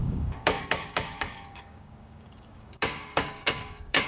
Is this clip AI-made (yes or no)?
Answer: yes